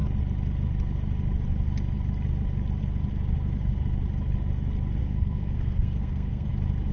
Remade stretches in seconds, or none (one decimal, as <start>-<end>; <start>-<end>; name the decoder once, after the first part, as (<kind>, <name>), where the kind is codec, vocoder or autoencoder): 5.0-6.5 (codec, SNAC)